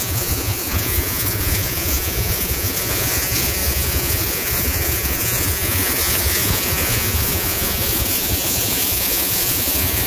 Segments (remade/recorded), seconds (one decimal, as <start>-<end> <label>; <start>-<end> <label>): 0.0-10.1 remade